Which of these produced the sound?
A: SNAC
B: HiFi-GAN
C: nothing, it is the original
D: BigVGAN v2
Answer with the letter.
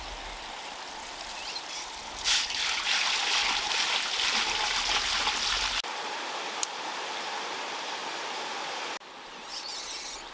C